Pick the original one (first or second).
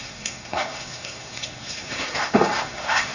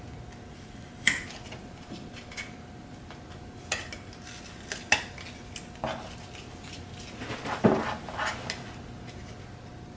second